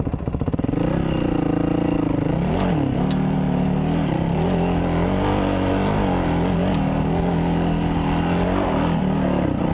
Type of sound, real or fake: real